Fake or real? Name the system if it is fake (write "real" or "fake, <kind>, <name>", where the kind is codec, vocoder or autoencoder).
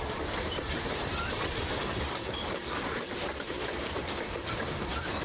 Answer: fake, vocoder, BigVGAN v2